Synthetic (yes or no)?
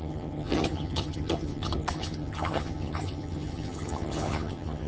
yes